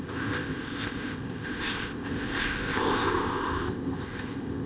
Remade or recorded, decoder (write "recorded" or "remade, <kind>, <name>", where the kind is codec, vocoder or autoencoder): remade, codec, ZipCodec